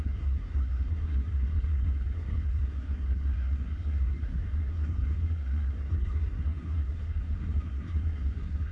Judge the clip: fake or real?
fake